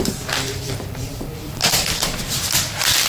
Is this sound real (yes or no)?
no